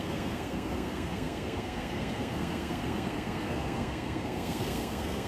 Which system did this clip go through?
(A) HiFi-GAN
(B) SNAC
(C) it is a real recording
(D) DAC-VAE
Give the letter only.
B